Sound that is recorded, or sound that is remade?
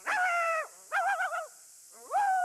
remade